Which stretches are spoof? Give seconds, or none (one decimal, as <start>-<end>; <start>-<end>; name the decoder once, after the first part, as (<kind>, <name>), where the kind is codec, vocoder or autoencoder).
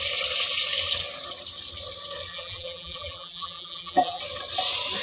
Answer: 2.3-4.2 (vocoder, BigVGAN v2)